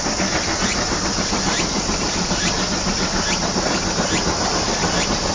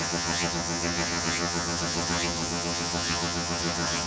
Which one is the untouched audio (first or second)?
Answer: first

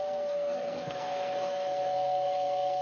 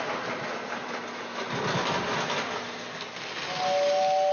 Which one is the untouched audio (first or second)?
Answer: second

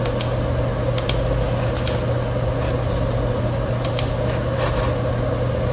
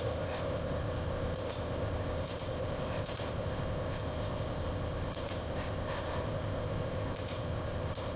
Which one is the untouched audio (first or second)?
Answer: first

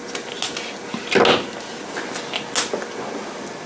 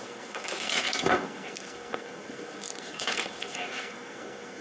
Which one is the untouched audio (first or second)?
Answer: first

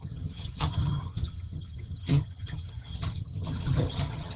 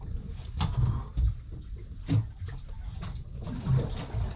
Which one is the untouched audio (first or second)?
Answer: second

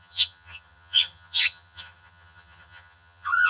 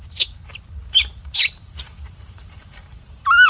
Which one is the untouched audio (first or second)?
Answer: second